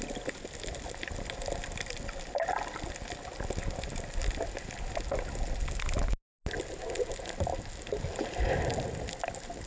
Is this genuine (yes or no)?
yes